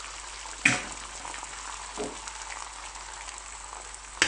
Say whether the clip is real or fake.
real